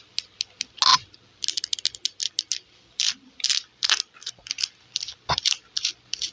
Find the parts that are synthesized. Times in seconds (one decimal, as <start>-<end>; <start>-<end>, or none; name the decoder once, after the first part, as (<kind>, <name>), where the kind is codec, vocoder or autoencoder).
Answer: none